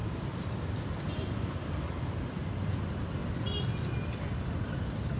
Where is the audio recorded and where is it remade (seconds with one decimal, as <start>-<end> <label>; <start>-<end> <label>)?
0.0-2.3 remade; 2.3-5.2 recorded